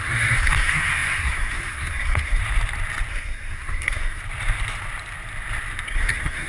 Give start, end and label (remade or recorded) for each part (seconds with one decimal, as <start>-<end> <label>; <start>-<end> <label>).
0.0-2.4 remade; 2.4-3.1 recorded; 3.1-4.2 remade; 4.2-5.9 recorded; 5.9-6.5 remade